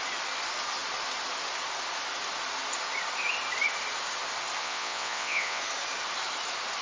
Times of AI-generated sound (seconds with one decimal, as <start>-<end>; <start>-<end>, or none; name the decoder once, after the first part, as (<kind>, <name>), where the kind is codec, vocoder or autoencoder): 4.6-5.6 (vocoder, WaveNeXt)